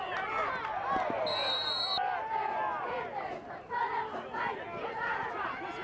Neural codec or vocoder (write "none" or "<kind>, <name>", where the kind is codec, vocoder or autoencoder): none